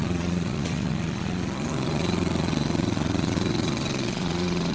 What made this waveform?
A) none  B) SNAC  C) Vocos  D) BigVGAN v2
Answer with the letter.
C